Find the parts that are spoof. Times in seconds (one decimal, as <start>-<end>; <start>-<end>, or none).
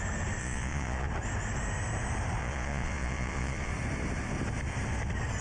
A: 0.4-1.1; 2.4-3.7